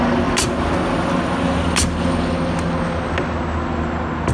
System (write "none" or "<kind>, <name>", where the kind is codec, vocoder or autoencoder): none